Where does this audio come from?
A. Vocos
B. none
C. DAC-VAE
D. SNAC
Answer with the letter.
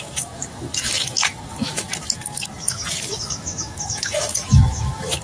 C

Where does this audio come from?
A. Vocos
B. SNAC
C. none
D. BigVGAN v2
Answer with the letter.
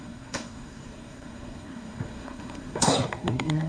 B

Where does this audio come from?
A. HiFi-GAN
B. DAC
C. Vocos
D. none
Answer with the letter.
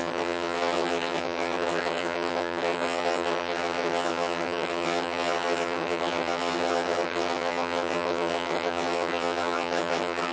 A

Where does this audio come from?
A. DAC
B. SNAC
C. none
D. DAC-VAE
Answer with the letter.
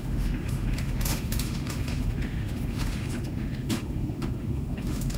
D